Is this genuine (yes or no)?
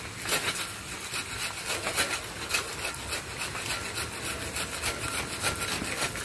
yes